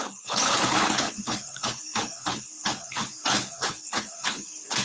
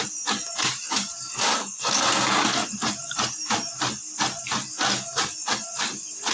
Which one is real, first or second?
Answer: second